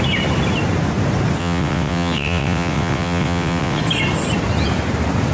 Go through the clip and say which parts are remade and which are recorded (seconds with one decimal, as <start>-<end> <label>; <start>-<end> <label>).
0.0-1.4 recorded; 1.4-3.8 remade; 3.8-5.3 recorded